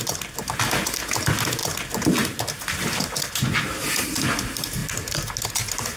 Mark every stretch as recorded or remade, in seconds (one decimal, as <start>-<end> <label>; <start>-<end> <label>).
0.0-6.0 recorded